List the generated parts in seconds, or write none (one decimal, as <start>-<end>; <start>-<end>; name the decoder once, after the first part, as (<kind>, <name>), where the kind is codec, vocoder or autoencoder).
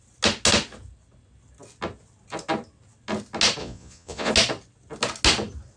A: 3.6-4.3 (vocoder, Vocos)